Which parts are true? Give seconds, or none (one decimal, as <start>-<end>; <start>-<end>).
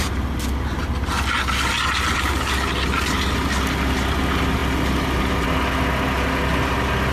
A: 0.0-7.1